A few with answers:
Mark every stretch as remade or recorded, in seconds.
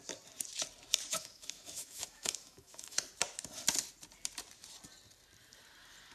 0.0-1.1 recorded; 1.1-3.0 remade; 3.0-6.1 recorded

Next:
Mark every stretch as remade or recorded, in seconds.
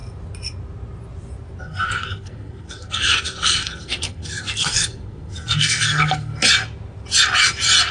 0.0-1.6 recorded; 1.6-6.3 remade; 6.3-7.9 recorded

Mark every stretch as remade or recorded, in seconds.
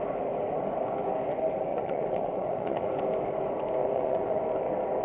0.0-1.7 recorded; 1.7-2.9 remade; 2.9-3.8 recorded; 3.8-4.4 remade; 4.4-5.0 recorded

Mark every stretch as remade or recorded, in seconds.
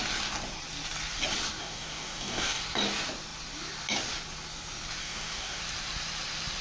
0.0-1.6 recorded; 1.6-2.6 remade; 2.6-5.0 recorded; 5.0-5.6 remade; 5.6-6.6 recorded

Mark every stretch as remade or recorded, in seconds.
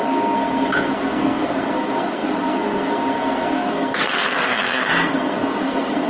0.0-6.1 remade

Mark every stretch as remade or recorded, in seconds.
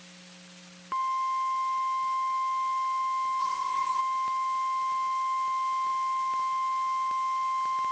0.0-3.4 recorded; 3.4-4.0 remade; 4.0-7.9 recorded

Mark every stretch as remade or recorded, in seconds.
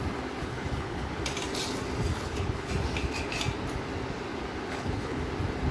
0.0-0.4 recorded; 0.4-1.2 remade; 1.2-2.1 recorded; 2.1-2.7 remade; 2.7-4.7 recorded; 4.7-5.2 remade; 5.2-5.7 recorded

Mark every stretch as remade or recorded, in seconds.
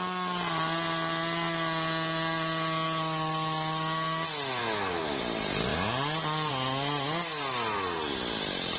0.0-4.6 recorded; 4.6-5.2 remade; 5.2-8.8 recorded